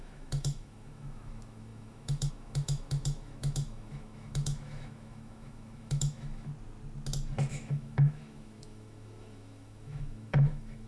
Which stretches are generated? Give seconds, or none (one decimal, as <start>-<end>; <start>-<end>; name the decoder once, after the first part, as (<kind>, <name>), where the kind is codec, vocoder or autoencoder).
0.0-6.5 (autoencoder, DAC-VAE); 7.5-10.9